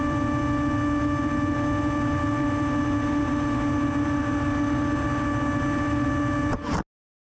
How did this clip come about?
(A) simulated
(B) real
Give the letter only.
B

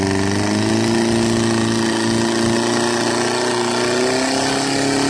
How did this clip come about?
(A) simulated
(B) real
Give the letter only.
B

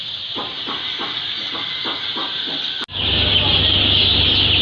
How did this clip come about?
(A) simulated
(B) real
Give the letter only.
B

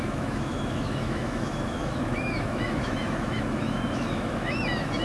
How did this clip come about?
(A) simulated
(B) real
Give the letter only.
A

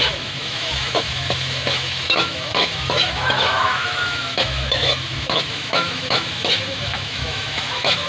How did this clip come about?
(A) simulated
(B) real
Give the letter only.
A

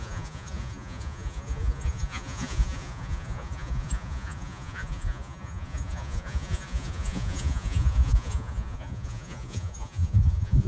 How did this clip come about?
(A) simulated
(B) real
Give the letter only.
A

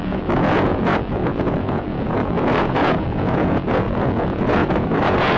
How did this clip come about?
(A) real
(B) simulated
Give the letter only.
B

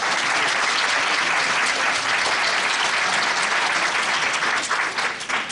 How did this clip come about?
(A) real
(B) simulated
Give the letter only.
A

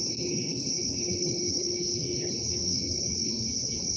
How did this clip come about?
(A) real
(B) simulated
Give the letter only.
B